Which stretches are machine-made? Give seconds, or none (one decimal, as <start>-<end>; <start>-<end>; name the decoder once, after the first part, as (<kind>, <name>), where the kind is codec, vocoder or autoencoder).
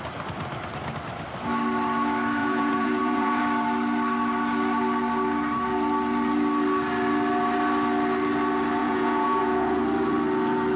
2.4-3.4 (vocoder, Vocos); 8.8-9.8